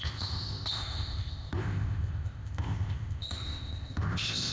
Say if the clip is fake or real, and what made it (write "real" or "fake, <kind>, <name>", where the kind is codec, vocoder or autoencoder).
fake, codec, ZipCodec